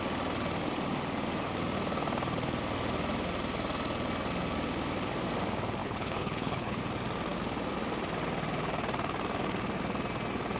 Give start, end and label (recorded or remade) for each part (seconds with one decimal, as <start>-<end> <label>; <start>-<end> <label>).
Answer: 0.0-5.8 recorded; 5.8-6.8 remade; 6.8-10.6 recorded

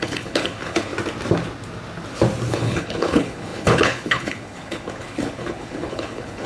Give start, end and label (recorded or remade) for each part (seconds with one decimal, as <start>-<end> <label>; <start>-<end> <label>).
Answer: 0.0-0.9 remade; 0.9-2.5 recorded; 2.5-6.5 remade

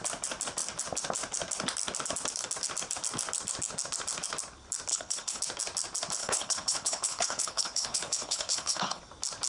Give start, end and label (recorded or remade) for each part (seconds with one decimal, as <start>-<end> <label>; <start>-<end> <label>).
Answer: 0.0-4.9 recorded; 4.9-5.4 remade; 5.4-6.2 recorded; 6.2-9.0 remade; 9.0-9.5 recorded

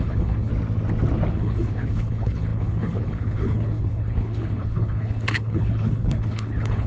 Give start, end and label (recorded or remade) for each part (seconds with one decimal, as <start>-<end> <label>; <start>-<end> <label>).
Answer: 0.0-0.5 remade; 0.5-1.3 recorded; 1.3-6.9 remade